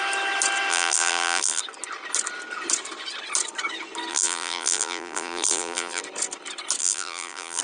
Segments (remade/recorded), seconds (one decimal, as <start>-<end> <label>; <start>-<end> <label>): 0.0-0.7 recorded; 0.7-1.6 remade; 1.6-4.1 recorded; 4.1-6.0 remade; 6.0-6.8 recorded; 6.8-7.6 remade